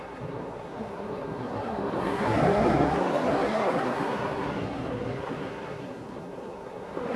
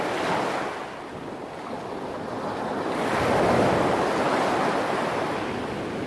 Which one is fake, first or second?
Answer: first